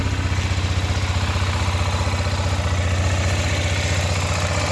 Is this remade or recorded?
recorded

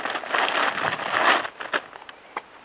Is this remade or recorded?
recorded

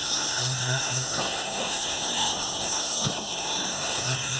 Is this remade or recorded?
remade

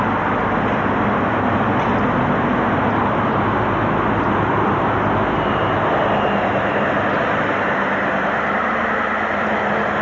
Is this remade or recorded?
recorded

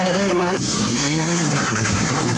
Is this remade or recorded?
remade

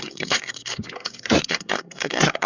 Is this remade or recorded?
remade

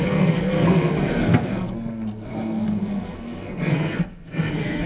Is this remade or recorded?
remade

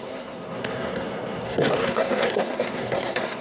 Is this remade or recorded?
remade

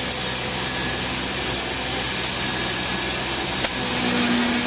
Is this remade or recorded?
recorded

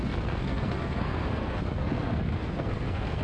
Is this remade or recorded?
remade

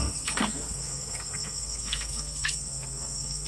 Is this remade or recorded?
remade